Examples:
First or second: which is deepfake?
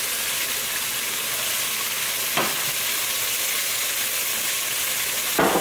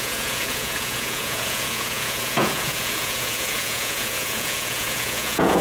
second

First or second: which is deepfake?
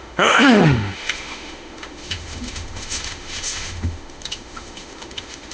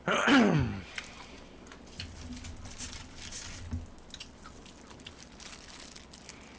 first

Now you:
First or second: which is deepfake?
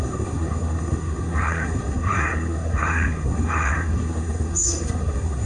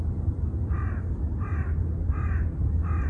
first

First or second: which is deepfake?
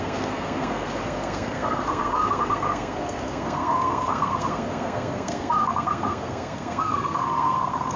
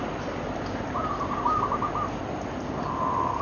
first